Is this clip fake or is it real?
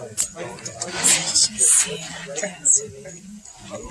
fake